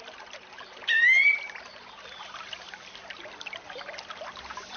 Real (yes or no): yes